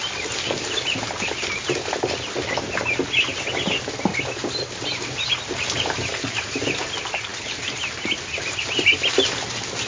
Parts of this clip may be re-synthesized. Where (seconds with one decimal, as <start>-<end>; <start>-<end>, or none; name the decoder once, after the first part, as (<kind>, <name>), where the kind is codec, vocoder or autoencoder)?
none